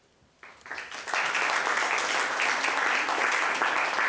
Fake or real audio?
real